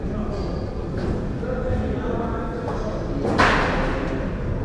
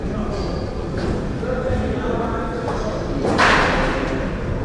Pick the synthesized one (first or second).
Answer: second